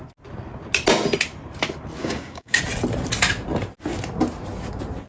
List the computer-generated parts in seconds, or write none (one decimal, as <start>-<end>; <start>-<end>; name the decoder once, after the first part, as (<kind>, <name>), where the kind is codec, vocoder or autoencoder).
2.0-2.6 (codec, DAC)